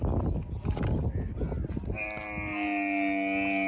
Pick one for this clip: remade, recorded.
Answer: recorded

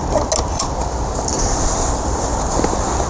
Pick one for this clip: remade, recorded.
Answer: recorded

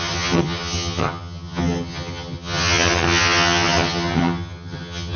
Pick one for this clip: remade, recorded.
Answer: remade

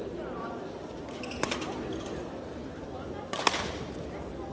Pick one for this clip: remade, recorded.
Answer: recorded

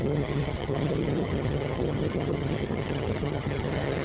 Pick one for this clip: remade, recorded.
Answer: remade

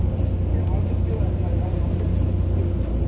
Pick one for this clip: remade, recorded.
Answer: recorded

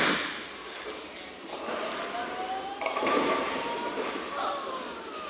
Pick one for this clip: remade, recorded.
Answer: recorded